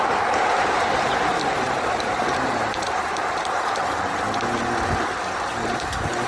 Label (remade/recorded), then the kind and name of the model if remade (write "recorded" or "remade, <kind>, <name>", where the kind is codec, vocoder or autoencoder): remade, vocoder, BigVGAN v2